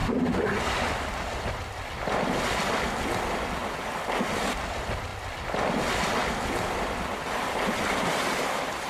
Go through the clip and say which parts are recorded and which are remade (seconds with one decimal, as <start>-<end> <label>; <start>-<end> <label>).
0.0-3.2 recorded; 3.2-3.6 remade; 3.6-4.2 recorded; 4.2-8.9 remade